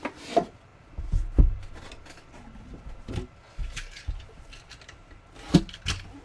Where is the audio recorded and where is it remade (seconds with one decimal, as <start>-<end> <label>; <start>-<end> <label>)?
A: 0.0-6.2 recorded